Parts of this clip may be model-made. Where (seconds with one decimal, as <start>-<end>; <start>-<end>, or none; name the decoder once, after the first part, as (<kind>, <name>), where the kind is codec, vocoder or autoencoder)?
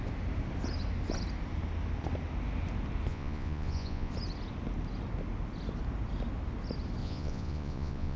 3.1-4.1 (vocoder, Vocos); 7.0-8.2